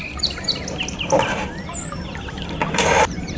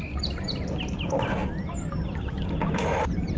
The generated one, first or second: first